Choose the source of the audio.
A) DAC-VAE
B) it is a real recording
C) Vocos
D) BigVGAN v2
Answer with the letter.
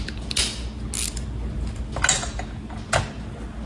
B